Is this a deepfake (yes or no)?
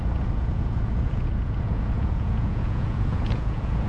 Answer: yes